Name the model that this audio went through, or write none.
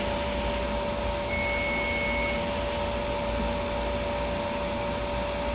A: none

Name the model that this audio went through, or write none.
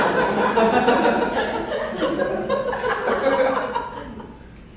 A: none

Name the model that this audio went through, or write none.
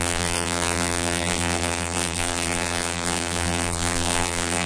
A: vocoder, BigVGAN v2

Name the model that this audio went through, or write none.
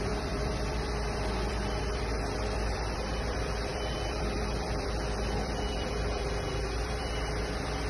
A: vocoder, BigVGAN v2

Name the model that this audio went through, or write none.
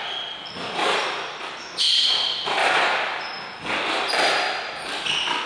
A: none